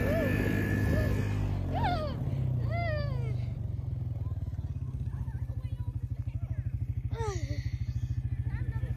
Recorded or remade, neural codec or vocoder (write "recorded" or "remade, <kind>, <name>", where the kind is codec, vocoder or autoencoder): recorded